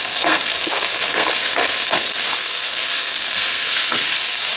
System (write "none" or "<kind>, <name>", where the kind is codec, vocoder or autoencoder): codec, SNAC